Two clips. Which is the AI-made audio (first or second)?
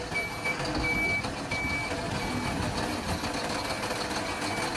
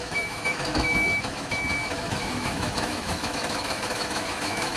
second